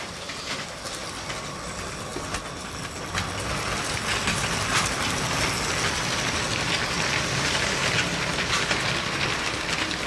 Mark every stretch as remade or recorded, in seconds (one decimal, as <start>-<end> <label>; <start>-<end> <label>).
0.0-10.1 recorded